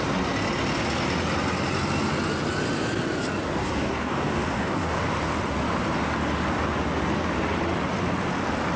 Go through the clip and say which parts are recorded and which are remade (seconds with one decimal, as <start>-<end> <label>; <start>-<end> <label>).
0.0-3.6 recorded; 3.6-5.1 remade; 5.1-8.8 recorded